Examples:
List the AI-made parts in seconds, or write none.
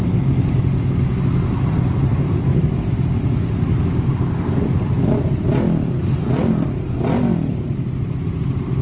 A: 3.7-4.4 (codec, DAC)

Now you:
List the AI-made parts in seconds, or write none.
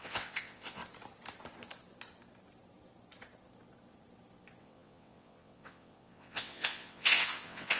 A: 0.0-0.8 (vocoder, WaveNeXt); 4.6-7.8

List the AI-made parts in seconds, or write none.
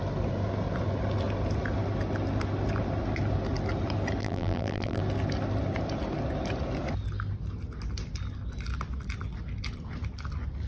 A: 4.2-5.0 (vocoder, BigVGAN v2)